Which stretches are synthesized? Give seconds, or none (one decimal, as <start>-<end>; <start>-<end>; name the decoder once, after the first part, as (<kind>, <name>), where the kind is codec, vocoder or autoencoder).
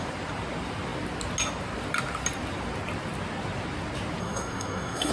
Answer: 4.2-5.1 (codec, SNAC)